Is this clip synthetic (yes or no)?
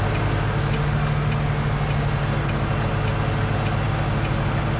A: no